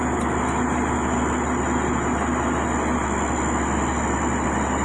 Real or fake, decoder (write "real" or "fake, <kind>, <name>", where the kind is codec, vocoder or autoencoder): real